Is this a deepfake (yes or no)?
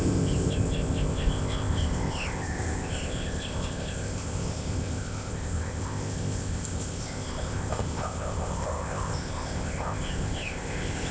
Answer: yes